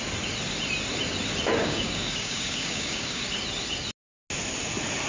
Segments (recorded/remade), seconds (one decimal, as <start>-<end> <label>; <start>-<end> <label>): 0.0-1.6 recorded; 1.6-3.2 remade; 3.2-5.1 recorded